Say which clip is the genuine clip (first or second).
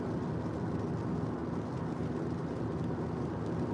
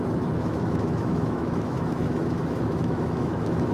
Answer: first